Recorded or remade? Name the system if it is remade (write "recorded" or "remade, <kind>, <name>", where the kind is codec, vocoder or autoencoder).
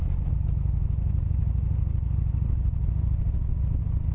recorded